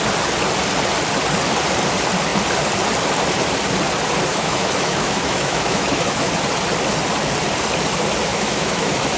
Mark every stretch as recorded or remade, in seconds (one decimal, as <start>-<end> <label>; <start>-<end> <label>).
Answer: 0.0-4.3 recorded; 4.3-6.3 remade; 6.3-8.3 recorded; 8.3-9.2 remade